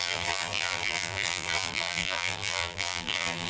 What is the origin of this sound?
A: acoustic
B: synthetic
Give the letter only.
B